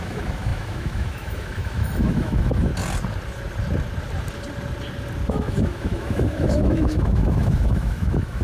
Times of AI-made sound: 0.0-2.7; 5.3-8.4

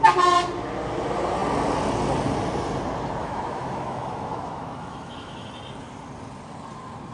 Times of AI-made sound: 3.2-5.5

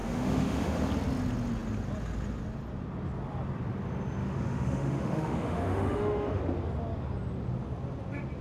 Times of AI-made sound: 0.0-0.9; 4.2-6.4

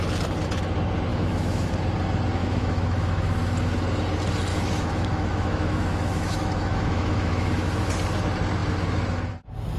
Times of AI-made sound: 1.1-1.7; 2.4-3.3; 4.5-7.9

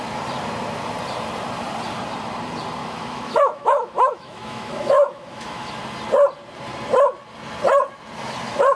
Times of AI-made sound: 2.8-5.7

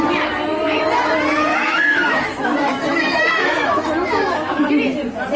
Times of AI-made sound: 1.5-4.7